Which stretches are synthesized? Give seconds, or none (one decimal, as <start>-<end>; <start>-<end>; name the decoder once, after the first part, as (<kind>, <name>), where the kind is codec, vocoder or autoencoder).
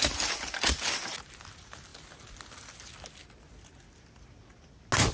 none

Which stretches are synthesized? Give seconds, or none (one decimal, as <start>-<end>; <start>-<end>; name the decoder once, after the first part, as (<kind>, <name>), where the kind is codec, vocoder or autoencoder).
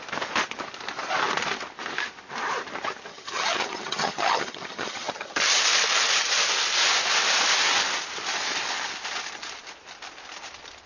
3.1-5.6 (vocoder, HiFi-GAN)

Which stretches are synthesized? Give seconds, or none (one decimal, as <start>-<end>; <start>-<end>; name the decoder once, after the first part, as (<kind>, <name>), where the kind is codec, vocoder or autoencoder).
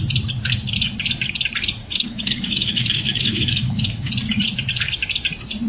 1.8-4.1 (autoencoder, DAC-VAE)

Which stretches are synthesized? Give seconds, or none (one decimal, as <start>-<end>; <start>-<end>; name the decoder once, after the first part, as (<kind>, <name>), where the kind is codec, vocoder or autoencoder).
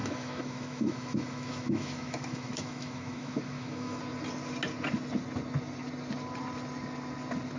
0.0-4.0 (autoencoder, DAC-VAE)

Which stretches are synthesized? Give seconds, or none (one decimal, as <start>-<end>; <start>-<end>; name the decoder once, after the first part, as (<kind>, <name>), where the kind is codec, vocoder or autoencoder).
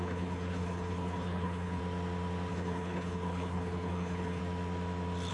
0.0-1.8 (codec, HILCodec); 2.5-4.4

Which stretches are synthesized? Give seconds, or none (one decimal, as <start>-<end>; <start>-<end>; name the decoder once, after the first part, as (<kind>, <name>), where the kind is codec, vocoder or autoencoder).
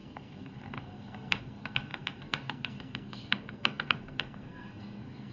0.0-5.3 (codec, SNAC)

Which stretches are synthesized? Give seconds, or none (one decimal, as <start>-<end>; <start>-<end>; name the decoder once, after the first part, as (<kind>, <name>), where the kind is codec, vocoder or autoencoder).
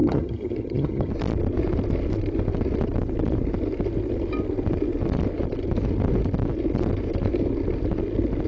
0.0-1.1 (vocoder, HiFi-GAN)